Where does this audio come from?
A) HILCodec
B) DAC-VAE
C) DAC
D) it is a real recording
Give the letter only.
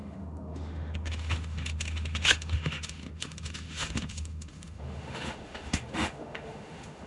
B